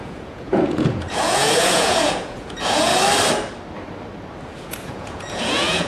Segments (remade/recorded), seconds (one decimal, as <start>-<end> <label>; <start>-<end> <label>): 0.0-2.9 remade; 2.9-4.6 recorded; 4.6-5.9 remade